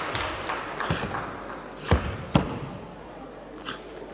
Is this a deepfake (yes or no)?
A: no